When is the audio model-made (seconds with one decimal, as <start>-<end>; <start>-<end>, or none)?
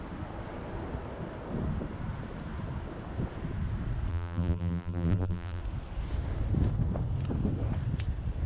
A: 4.1-5.6